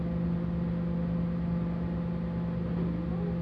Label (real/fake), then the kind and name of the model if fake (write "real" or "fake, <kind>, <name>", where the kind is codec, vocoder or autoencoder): real